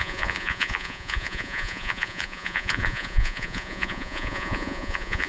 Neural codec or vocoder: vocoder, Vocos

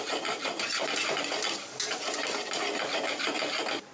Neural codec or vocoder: none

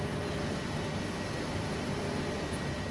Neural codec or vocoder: none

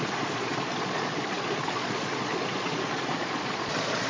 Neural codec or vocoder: vocoder, Vocos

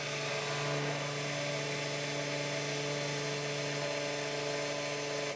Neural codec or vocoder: none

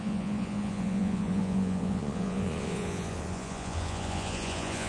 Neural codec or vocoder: vocoder, Vocos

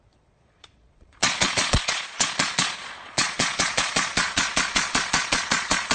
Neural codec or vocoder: vocoder, Vocos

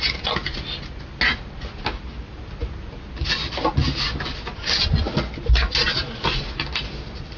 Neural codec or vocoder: none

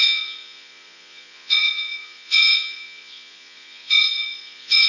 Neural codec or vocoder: vocoder, Vocos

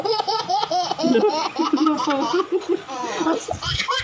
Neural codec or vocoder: vocoder, Vocos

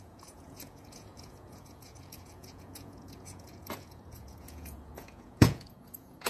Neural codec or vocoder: vocoder, Vocos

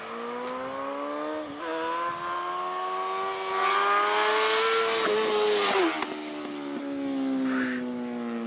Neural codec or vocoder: none